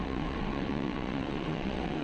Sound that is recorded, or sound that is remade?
remade